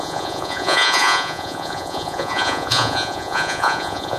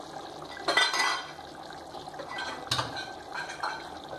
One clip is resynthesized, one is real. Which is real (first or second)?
second